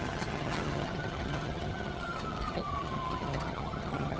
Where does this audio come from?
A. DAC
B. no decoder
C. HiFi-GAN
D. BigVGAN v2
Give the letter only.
C